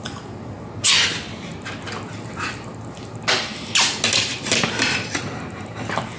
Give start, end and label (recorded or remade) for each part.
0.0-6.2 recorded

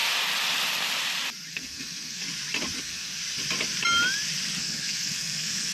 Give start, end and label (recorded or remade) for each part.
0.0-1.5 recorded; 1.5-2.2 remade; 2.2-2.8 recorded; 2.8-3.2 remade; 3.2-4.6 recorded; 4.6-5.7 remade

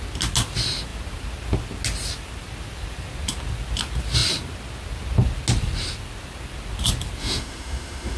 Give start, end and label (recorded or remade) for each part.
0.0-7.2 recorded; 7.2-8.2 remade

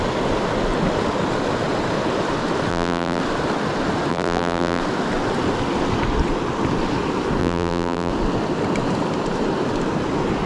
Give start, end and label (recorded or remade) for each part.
0.0-2.7 recorded; 2.7-3.2 remade; 3.2-4.1 recorded; 4.1-4.8 remade; 4.8-7.4 recorded; 7.4-8.1 remade; 8.1-10.5 recorded